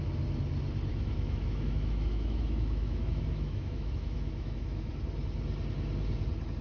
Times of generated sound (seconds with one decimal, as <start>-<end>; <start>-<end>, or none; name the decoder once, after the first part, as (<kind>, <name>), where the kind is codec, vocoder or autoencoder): 0.9-4.9 (autoencoder, DAC-VAE)